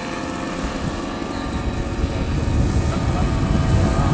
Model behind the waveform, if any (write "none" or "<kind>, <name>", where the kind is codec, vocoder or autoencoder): none